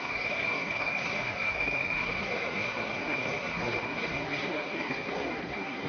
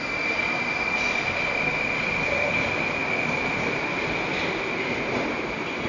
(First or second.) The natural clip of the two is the second